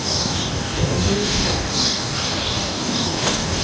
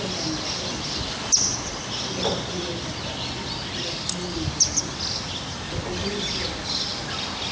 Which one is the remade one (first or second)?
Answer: first